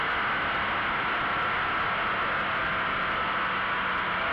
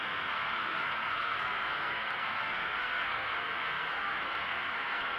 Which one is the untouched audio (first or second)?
first